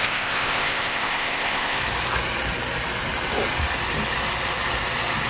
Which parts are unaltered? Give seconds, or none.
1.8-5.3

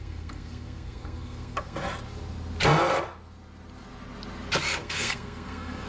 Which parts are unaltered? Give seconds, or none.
1.8-4.8

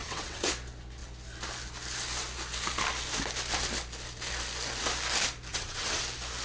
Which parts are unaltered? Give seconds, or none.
0.5-5.5; 6.0-6.4